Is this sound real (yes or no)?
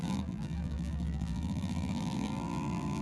no